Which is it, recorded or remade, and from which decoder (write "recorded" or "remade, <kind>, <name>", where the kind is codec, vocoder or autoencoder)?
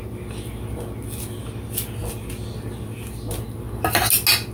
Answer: recorded